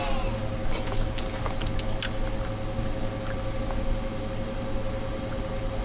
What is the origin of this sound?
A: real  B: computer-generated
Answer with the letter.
A